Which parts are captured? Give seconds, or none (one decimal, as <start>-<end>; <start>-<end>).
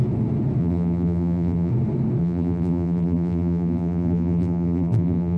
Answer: 0.0-0.6; 1.7-2.2